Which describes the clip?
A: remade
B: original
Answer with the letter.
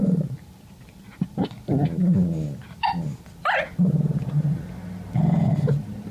B